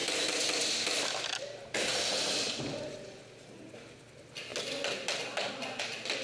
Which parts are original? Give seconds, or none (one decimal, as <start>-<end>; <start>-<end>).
0.0-6.2